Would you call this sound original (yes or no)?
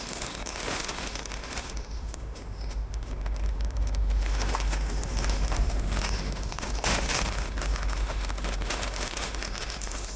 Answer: no